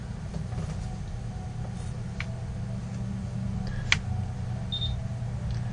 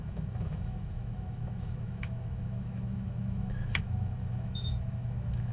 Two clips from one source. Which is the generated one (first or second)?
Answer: second